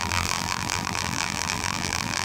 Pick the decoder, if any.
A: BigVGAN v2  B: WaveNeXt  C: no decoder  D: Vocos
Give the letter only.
A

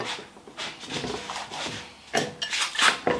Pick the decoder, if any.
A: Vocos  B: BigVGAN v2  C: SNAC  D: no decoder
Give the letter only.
D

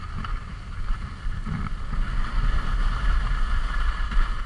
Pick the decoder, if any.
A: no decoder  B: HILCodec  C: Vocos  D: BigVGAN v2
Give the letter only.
A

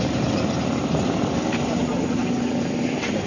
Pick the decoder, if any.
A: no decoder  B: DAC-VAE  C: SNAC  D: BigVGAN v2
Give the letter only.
A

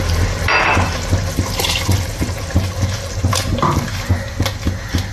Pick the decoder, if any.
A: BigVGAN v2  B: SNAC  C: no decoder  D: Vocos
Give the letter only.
C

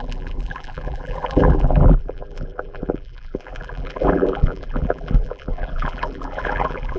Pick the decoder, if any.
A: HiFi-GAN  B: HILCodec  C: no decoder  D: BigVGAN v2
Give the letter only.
D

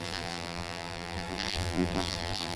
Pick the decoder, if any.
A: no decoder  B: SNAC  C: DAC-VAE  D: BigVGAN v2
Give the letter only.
D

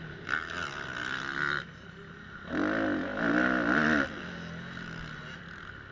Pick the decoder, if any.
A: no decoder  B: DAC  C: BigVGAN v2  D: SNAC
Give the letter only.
A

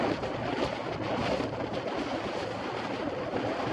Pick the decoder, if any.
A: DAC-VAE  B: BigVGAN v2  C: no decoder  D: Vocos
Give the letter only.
C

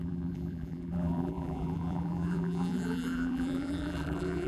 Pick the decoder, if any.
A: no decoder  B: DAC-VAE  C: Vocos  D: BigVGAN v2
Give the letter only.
D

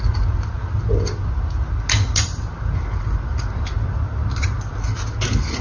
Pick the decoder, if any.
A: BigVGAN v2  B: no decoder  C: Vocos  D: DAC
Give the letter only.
B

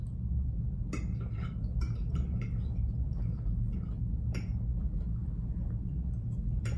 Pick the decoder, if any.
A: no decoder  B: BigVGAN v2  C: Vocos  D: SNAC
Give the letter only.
A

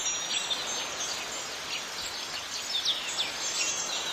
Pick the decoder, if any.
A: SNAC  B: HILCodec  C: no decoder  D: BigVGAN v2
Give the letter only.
C